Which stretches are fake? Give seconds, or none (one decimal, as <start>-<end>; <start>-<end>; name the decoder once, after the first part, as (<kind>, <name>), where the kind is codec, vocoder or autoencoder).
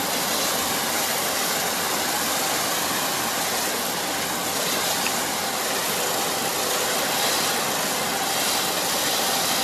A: none